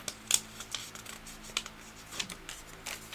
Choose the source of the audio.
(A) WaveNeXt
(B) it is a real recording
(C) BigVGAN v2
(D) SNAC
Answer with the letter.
B